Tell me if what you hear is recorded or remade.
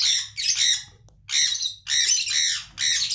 recorded